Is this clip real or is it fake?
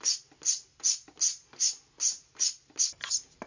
real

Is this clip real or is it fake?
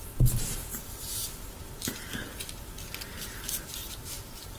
real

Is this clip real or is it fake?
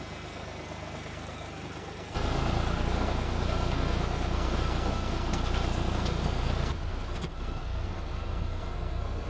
fake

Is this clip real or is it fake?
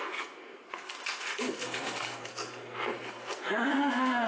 fake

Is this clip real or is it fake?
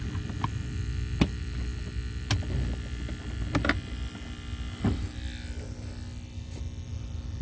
real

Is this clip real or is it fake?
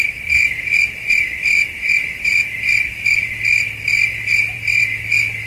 real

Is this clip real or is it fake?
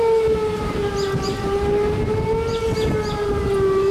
real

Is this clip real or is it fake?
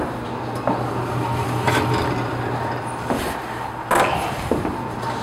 real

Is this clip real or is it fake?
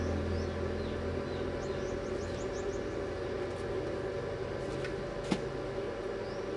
real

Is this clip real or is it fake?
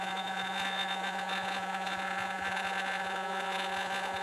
fake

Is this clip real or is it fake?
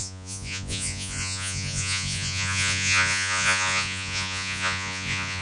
fake